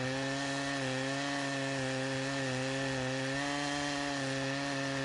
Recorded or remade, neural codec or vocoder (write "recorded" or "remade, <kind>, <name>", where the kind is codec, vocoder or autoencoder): recorded